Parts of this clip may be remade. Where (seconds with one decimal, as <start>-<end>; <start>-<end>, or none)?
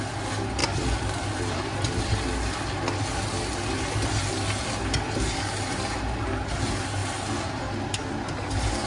0.6-2.6; 7.0-7.6